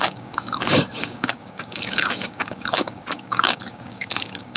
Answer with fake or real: fake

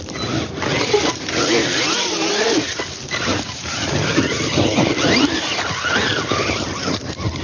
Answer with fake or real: real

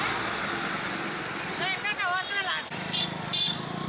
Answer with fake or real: real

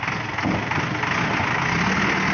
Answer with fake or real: real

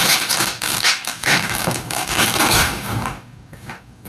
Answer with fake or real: fake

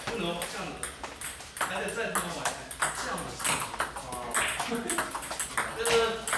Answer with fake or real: real